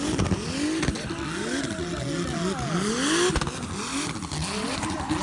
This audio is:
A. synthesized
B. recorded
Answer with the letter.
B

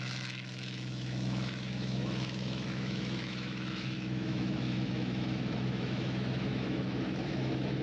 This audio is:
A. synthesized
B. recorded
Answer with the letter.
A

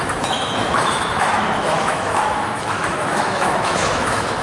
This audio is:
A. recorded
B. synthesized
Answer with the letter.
B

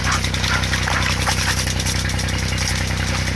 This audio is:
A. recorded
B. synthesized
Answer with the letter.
A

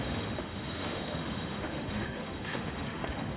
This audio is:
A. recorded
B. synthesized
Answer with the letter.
B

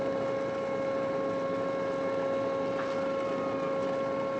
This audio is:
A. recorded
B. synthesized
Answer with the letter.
A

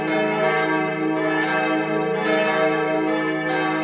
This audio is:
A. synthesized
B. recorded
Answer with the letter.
B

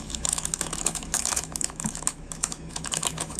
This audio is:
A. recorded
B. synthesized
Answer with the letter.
B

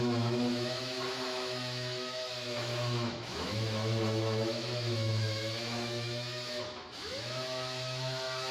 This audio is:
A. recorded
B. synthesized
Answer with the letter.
B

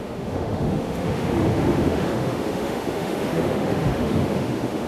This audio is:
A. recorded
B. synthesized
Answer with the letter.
B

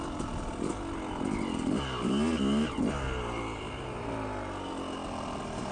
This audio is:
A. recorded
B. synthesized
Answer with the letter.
A